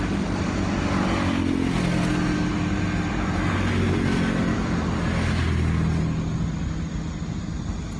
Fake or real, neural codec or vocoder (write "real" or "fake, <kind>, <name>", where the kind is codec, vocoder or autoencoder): real